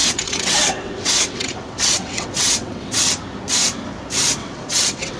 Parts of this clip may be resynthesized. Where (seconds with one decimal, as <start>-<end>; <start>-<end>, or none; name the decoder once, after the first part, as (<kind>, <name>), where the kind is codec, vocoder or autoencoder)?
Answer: 0.0-3.1 (vocoder, WaveNeXt); 4.4-5.2